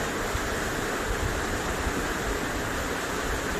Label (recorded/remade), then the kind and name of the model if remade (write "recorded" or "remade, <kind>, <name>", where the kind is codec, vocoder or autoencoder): recorded